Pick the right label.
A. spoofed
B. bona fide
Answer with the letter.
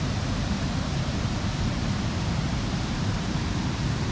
A